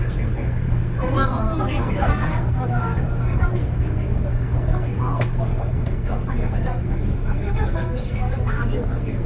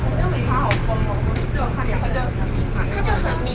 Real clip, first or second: second